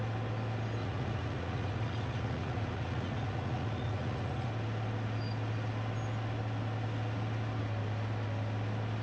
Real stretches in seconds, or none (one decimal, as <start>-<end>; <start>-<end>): 0.0-0.8; 4.5-9.0